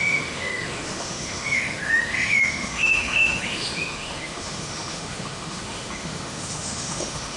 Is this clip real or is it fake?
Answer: fake